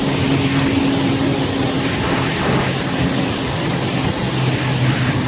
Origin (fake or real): real